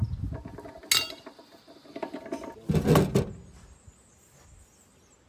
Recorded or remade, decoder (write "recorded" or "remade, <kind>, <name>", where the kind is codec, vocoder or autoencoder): recorded